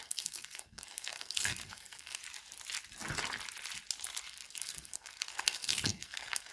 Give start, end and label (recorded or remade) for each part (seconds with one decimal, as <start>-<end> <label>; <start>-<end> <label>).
0.0-2.2 remade; 2.2-4.3 recorded; 4.3-6.5 remade